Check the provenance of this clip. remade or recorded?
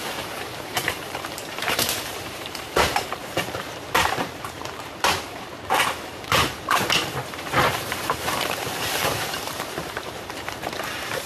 remade